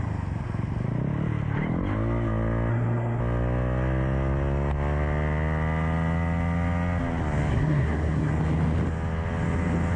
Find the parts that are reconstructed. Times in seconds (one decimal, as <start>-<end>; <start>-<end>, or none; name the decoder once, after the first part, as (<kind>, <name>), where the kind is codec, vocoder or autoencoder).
2.7-3.2 (codec, SNAC); 7.5-8.3